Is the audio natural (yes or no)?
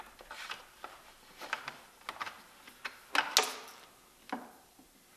yes